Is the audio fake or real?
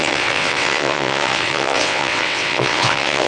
fake